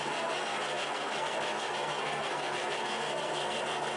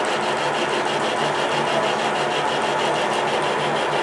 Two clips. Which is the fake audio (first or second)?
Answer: first